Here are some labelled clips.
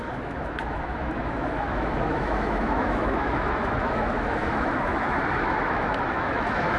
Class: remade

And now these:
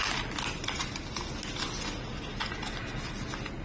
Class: recorded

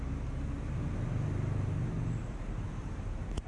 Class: recorded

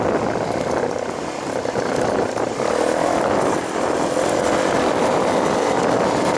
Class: recorded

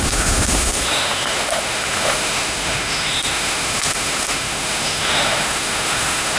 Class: remade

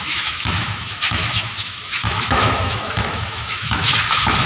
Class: remade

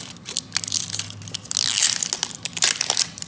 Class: recorded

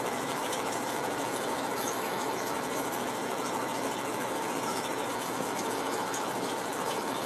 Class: remade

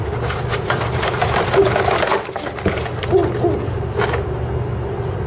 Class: recorded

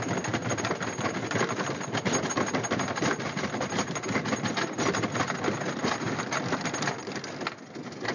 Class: recorded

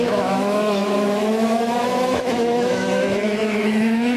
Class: remade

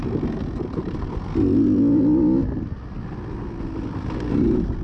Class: recorded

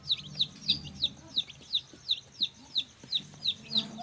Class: recorded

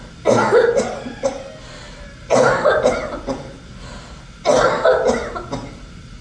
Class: recorded